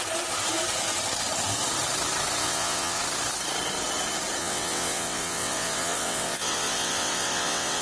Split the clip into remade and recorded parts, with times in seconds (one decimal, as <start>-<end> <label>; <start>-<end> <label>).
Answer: 0.0-2.4 recorded; 2.4-3.0 remade; 3.0-4.4 recorded; 4.4-7.8 remade